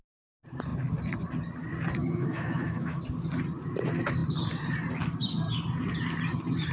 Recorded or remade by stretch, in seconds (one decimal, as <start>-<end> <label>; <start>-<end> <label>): 0.0-2.0 recorded; 2.0-3.0 remade; 3.0-6.7 recorded